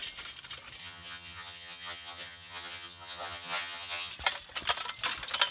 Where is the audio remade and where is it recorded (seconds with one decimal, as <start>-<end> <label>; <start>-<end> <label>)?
0.0-0.8 recorded; 0.8-4.1 remade; 4.1-5.5 recorded